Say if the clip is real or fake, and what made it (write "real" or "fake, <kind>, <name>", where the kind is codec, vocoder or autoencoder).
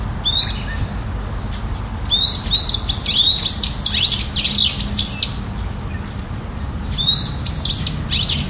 real